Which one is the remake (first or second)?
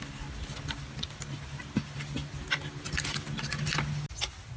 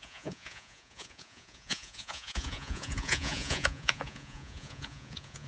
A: second